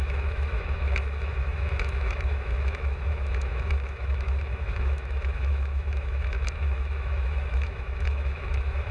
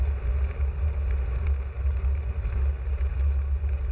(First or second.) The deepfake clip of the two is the first